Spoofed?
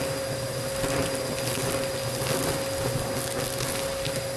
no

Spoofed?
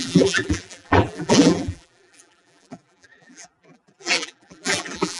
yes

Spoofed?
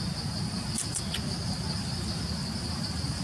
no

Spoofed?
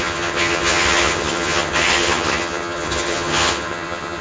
yes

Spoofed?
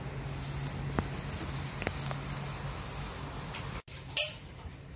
no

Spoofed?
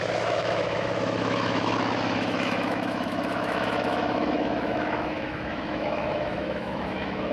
yes